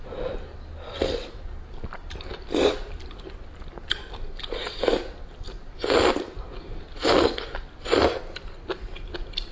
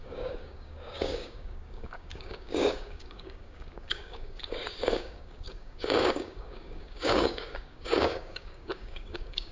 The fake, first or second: second